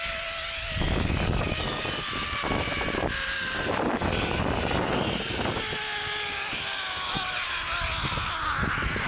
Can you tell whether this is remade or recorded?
recorded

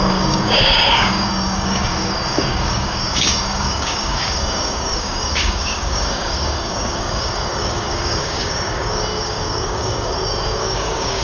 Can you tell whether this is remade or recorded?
remade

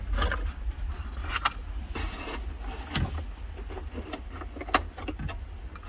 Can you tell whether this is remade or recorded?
recorded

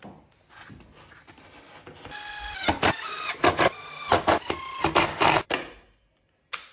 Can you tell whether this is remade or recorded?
recorded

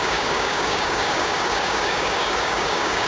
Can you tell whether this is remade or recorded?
remade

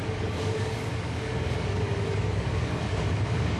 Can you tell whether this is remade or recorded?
remade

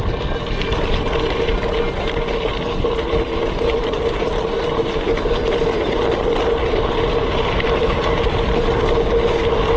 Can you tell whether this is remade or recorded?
recorded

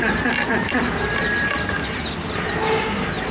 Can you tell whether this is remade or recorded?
recorded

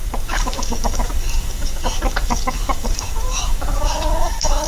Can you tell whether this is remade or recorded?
remade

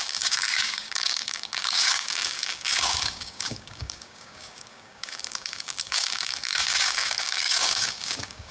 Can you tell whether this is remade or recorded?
remade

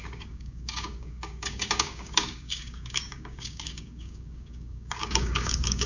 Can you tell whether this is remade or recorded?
remade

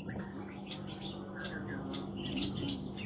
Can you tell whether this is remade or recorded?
recorded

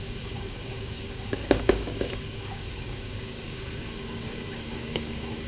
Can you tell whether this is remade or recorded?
remade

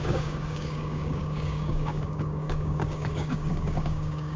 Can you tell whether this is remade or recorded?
remade